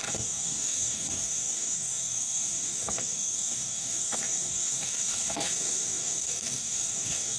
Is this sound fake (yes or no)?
yes